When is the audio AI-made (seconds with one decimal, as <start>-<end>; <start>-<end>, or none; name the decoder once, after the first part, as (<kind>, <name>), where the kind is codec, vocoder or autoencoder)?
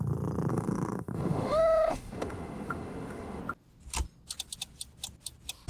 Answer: 0.5-3.4 (autoencoder, DAC-VAE)